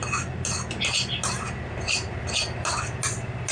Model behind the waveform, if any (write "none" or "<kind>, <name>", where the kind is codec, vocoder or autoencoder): none